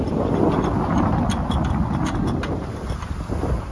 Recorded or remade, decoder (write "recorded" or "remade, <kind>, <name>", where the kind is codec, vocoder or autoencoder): recorded